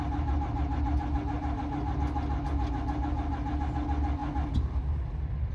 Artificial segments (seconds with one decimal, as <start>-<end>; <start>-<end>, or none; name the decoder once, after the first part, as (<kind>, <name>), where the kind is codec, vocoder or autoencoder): none